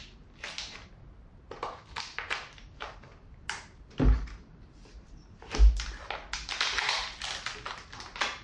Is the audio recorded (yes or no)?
yes